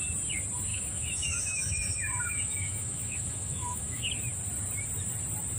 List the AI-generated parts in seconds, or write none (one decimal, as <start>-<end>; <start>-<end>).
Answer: 0.7-4.1